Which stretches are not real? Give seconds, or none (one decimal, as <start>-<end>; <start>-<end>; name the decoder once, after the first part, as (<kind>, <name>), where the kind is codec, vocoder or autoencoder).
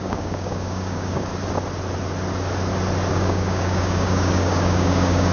0.0-1.3 (codec, DAC); 3.1-5.3